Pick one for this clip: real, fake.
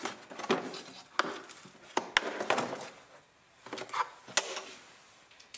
real